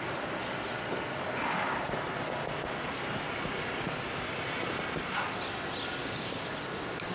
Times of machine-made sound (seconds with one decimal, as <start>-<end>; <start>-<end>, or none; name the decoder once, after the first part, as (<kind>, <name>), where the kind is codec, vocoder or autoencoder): 6.0-6.5 (codec, DAC)